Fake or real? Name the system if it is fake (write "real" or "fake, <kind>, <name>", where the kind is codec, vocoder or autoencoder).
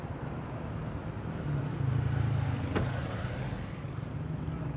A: real